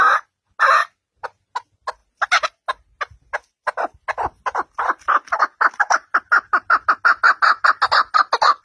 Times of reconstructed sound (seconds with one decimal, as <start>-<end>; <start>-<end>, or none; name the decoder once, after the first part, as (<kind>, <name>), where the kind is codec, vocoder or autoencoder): none